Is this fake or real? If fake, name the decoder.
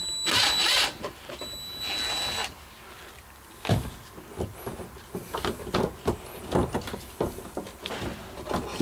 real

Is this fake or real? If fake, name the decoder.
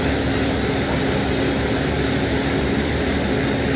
real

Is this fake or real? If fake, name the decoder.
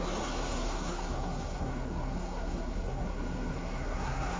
fake, codec, SNAC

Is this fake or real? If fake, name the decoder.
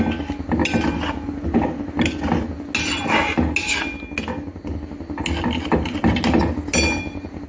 real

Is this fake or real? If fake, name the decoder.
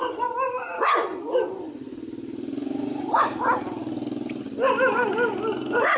real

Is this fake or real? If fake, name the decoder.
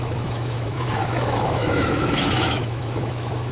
fake, autoencoder, DAC-VAE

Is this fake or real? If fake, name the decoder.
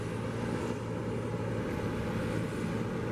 real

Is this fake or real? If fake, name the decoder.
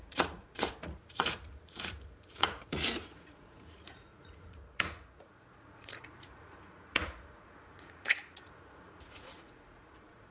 fake, vocoder, Vocos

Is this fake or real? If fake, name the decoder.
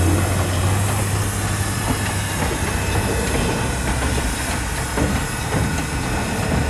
real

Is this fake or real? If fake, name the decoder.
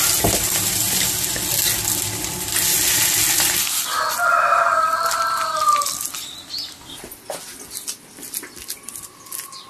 real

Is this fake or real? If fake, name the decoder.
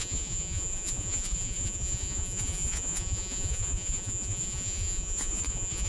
fake, vocoder, Vocos